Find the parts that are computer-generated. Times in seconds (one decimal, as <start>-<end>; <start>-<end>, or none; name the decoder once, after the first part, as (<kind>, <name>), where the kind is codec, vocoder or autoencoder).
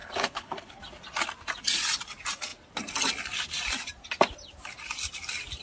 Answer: 0.0-0.8 (codec, HILCodec)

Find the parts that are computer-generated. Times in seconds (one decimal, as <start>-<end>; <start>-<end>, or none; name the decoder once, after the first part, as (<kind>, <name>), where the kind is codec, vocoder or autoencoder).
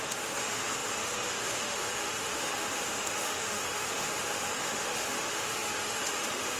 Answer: 0.0-6.6 (autoencoder, DAC-VAE)